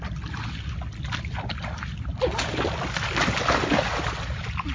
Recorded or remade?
recorded